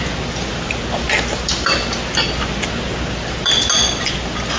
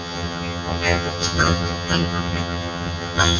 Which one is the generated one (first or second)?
second